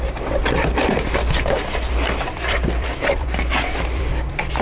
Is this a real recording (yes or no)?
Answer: no